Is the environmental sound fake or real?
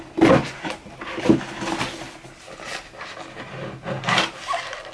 real